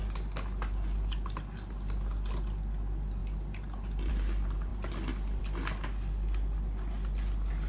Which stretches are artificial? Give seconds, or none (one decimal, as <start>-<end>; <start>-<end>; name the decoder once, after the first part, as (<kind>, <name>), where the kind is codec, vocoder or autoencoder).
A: none